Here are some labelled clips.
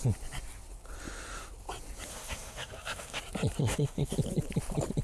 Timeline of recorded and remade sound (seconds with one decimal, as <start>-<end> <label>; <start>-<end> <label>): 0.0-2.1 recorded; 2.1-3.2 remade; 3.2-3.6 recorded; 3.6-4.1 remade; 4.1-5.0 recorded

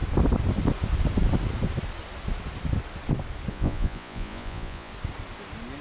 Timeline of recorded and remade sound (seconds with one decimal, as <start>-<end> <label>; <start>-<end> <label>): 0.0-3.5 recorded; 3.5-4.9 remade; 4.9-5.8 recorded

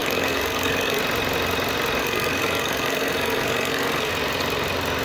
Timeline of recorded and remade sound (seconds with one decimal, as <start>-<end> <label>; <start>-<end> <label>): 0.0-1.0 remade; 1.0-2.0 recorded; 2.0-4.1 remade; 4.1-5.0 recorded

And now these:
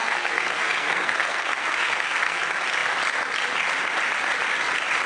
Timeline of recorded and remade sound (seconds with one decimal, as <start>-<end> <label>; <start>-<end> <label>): 0.0-2.4 remade; 2.4-5.1 recorded

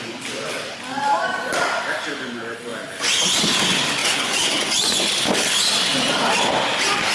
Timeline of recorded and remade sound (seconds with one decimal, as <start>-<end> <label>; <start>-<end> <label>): 0.0-4.0 recorded; 4.0-5.1 remade; 5.1-7.1 recorded

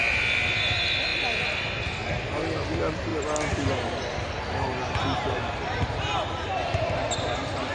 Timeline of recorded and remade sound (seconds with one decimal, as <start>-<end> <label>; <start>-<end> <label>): 0.0-1.1 recorded; 1.1-1.7 remade; 1.7-7.7 recorded